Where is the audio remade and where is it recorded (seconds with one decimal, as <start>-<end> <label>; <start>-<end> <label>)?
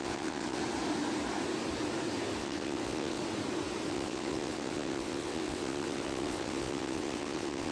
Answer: 0.0-0.6 remade; 0.6-2.4 recorded; 2.4-3.2 remade; 3.2-3.9 recorded; 3.9-7.7 remade